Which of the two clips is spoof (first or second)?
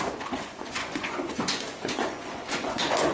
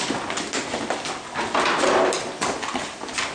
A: first